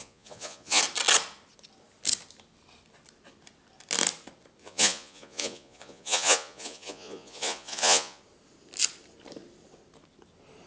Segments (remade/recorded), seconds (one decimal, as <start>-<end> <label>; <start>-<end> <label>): 0.0-0.8 remade; 0.8-4.6 recorded; 4.6-8.2 remade; 8.2-10.7 recorded